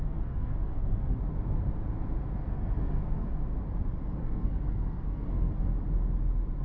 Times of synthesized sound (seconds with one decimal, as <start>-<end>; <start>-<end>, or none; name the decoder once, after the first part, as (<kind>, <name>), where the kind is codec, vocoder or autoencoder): 0.0-1.2 (codec, SNAC); 2.4-3.3; 4.0-5.7